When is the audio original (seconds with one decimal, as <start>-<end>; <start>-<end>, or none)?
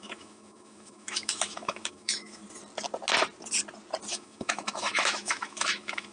2.4-4.1